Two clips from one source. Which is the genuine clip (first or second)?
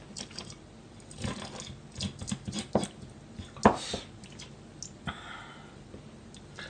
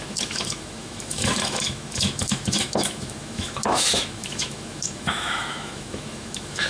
first